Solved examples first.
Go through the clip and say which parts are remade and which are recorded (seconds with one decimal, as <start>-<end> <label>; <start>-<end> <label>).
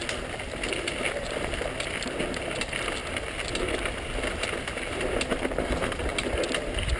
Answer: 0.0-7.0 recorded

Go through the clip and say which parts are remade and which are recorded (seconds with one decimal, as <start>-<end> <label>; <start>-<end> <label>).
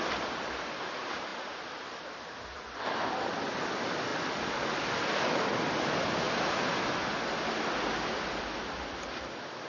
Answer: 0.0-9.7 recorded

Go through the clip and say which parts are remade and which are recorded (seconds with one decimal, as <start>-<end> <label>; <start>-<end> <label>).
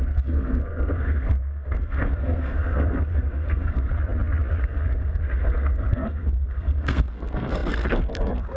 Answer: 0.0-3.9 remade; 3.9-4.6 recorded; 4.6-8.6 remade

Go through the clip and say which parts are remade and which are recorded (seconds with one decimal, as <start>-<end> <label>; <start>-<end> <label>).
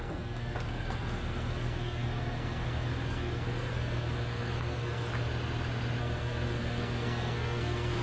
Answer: 0.0-5.1 remade; 5.1-6.0 recorded; 6.0-8.0 remade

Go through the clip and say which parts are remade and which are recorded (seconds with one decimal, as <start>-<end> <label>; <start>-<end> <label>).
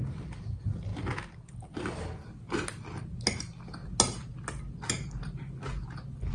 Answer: 0.0-6.3 recorded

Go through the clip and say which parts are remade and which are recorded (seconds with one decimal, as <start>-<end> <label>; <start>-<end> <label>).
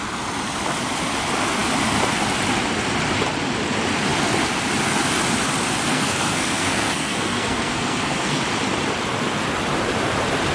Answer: 0.0-5.9 recorded; 5.9-8.4 remade; 8.4-10.5 recorded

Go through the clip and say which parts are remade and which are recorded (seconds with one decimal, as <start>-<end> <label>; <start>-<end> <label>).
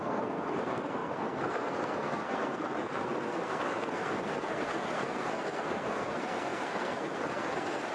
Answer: 0.0-7.9 remade